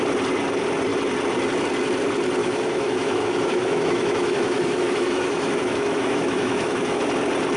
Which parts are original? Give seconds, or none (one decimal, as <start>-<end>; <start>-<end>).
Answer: 0.0-2.4; 7.0-7.6